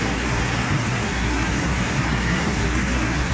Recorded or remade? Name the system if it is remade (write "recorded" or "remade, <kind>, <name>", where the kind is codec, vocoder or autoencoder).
remade, codec, SNAC